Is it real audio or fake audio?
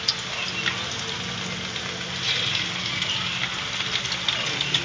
real